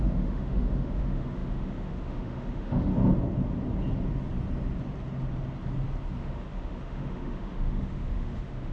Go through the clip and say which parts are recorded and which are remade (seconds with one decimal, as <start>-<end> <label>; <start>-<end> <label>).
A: 0.0-2.9 remade; 2.9-6.2 recorded; 6.2-8.7 remade